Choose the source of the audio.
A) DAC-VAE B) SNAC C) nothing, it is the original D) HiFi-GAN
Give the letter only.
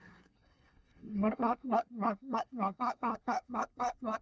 B